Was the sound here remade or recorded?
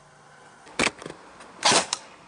recorded